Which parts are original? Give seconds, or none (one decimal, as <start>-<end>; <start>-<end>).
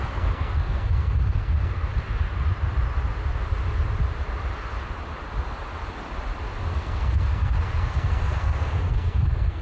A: 1.9-6.7